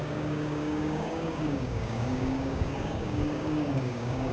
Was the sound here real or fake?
fake